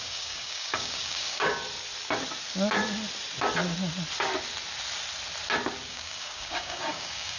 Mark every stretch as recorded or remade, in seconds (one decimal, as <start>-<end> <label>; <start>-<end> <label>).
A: 0.0-1.5 remade; 1.5-5.9 recorded; 5.9-7.4 remade